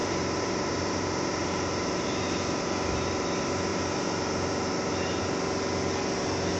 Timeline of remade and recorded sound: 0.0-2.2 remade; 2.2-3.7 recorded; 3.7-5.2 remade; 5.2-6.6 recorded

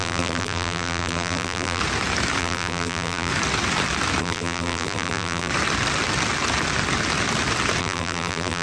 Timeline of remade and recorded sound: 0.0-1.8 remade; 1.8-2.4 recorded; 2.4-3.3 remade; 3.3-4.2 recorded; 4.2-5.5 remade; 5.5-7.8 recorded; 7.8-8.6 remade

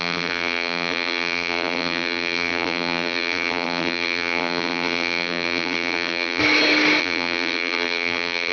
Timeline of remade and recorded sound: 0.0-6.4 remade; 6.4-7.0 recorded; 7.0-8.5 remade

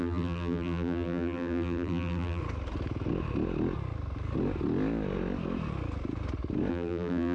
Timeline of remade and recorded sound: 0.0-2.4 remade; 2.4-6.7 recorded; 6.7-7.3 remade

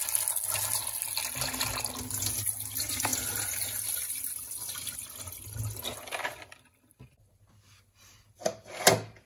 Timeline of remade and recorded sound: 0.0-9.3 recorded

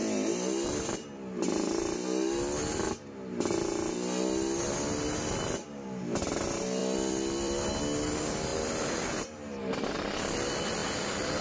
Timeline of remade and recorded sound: 0.0-6.8 recorded; 6.8-7.7 remade; 7.7-8.5 recorded; 8.5-10.2 remade; 10.2-10.8 recorded; 10.8-11.4 remade

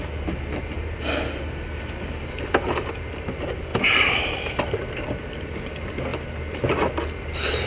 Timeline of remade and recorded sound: 0.0-7.7 remade

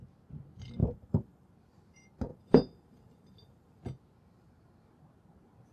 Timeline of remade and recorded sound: 0.0-0.8 recorded; 0.8-1.5 remade; 1.5-2.3 recorded; 2.3-3.8 remade; 3.8-5.7 recorded